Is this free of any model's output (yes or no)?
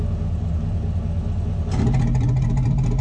yes